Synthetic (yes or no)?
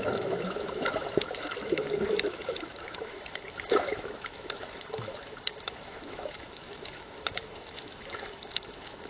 yes